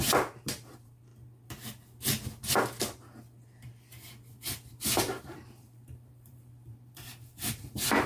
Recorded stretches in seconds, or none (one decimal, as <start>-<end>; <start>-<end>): 1.1-4.7